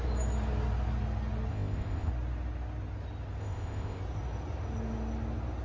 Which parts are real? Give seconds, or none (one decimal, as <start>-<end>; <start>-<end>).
0.0-1.5; 2.1-3.4; 4.0-5.6